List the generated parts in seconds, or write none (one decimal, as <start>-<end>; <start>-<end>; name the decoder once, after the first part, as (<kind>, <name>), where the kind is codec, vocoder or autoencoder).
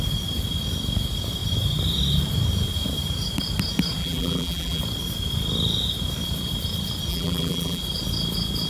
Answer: 4.0-4.8 (vocoder, BigVGAN v2); 7.1-7.8